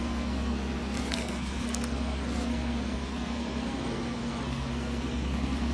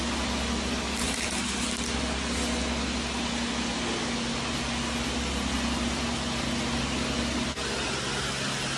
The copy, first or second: first